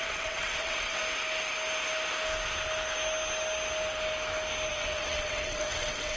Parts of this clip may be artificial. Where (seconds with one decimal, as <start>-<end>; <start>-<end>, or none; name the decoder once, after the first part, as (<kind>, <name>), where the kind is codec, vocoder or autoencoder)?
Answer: 0.0-1.0 (vocoder, WaveNeXt); 4.7-6.2